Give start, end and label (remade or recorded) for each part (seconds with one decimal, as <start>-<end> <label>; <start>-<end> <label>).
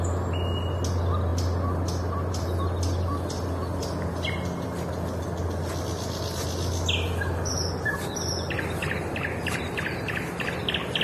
0.0-11.0 recorded